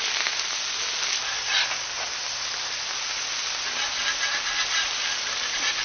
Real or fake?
real